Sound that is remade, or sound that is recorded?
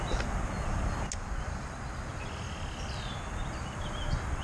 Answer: recorded